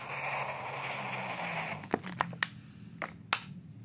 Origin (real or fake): real